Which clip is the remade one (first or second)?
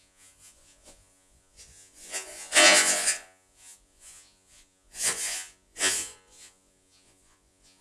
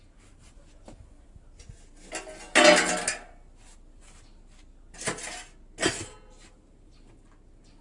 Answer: first